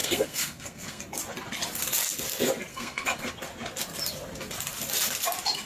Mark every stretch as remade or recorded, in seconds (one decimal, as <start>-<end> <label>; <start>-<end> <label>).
0.0-1.0 remade; 1.0-2.7 recorded; 2.7-3.3 remade; 3.3-5.7 recorded